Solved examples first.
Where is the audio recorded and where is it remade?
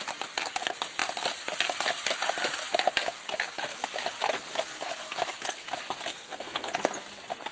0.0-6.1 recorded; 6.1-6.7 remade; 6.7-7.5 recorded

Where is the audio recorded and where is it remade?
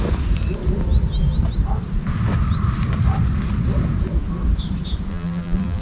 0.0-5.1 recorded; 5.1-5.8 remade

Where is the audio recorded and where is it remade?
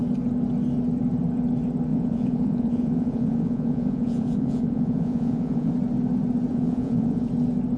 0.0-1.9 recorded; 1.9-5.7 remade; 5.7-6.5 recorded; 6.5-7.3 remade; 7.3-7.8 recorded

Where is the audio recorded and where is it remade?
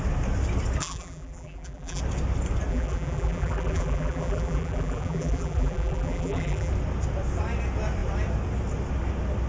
0.0-0.8 recorded; 0.8-2.0 remade; 2.0-2.7 recorded; 2.7-6.7 remade; 6.7-9.5 recorded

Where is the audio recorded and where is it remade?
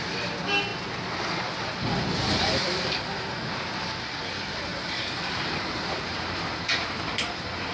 0.0-4.7 recorded; 4.7-6.4 remade; 6.4-7.7 recorded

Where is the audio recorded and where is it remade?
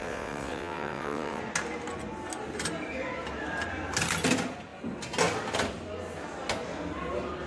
0.0-1.4 remade; 1.4-7.5 recorded